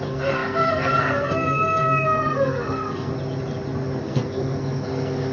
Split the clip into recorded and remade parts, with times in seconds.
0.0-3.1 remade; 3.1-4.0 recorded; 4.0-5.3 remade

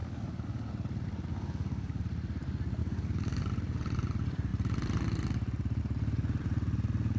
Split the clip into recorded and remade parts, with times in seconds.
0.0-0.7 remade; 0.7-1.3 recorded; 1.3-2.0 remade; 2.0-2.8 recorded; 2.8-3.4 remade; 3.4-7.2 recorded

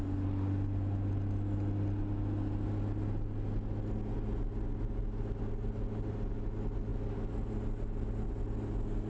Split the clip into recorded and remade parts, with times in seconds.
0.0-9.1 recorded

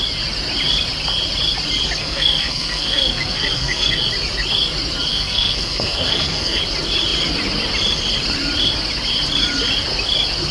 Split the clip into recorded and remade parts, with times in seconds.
0.0-2.0 recorded; 2.0-4.1 remade; 4.1-5.1 recorded; 5.1-6.6 remade; 6.6-10.5 recorded

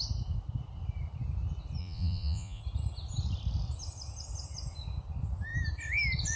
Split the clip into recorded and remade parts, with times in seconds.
0.0-1.8 recorded; 1.8-2.6 remade; 2.6-6.4 recorded

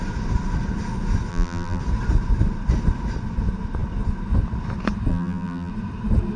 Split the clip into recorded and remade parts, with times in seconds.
0.0-1.3 recorded; 1.3-1.8 remade; 1.8-5.1 recorded; 5.1-5.7 remade; 5.7-6.4 recorded